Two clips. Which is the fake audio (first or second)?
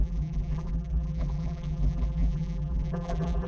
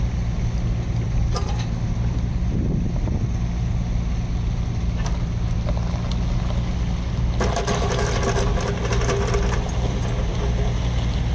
first